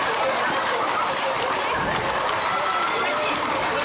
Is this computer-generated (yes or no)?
yes